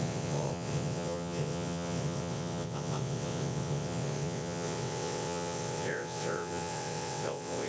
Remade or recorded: remade